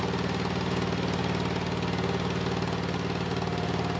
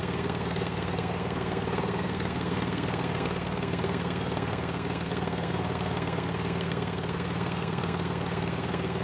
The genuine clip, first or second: first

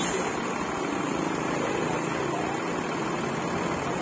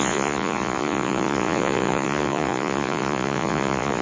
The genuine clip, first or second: first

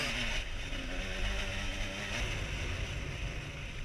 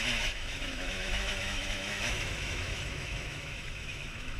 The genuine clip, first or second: first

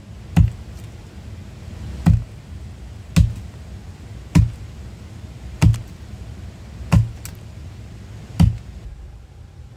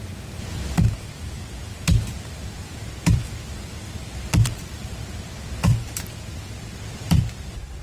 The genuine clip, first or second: first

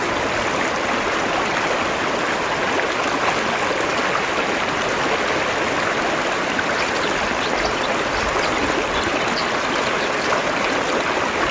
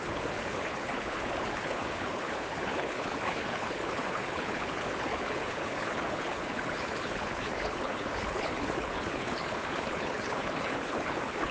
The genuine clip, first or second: first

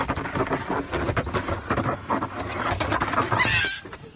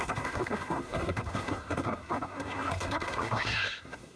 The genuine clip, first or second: first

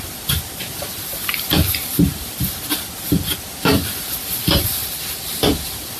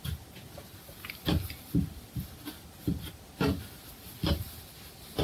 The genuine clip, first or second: second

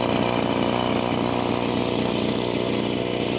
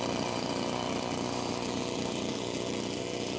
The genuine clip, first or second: first